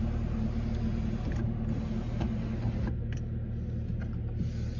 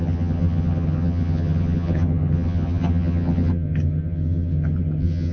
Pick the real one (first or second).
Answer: first